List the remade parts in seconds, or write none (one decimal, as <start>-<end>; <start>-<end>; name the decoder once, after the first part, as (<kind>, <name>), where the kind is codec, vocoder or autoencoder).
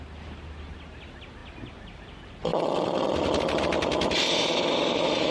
none